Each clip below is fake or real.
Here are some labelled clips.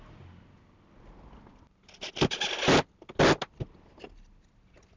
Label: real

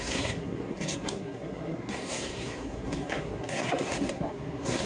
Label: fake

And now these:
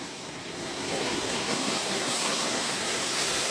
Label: fake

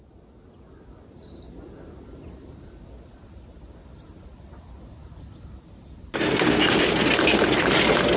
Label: real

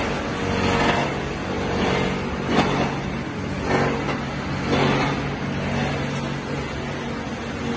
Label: real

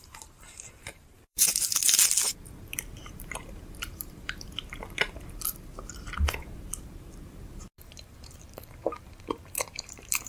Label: fake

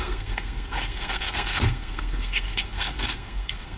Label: fake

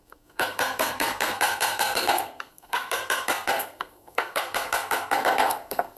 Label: fake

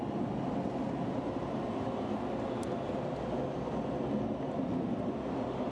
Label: real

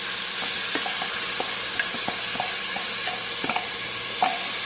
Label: real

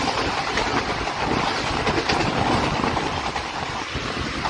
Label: real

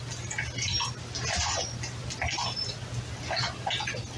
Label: real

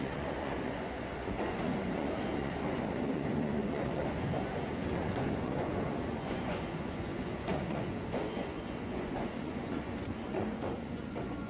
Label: fake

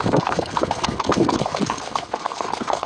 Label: fake